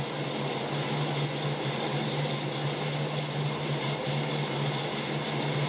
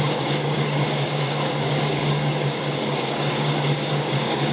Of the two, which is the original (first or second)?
first